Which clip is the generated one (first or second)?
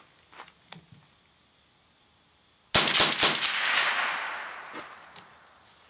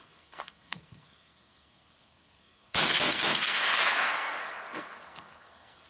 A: second